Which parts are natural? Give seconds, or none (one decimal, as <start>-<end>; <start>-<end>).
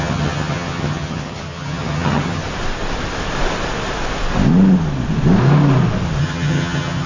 2.4-6.2